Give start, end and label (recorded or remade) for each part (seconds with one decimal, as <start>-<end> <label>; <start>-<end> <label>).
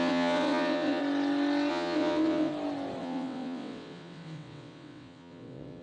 0.0-1.0 remade; 1.0-1.7 recorded; 1.7-2.5 remade; 2.5-3.0 recorded; 3.0-5.8 remade